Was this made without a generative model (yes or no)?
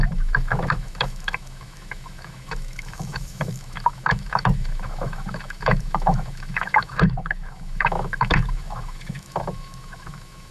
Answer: no